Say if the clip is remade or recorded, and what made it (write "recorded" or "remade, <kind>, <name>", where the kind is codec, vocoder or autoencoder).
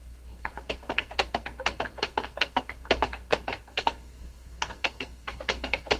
remade, codec, SNAC